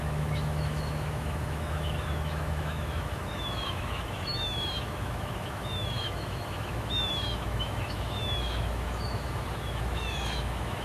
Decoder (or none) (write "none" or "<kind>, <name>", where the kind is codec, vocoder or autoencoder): autoencoder, DAC-VAE